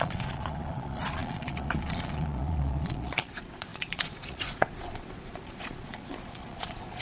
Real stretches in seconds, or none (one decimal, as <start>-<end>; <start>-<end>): none